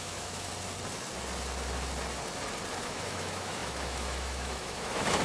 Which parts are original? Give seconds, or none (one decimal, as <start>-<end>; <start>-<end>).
0.5-2.7